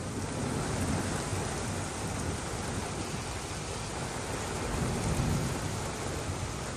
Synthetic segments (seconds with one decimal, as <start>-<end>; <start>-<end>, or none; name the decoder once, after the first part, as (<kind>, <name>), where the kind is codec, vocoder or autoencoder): none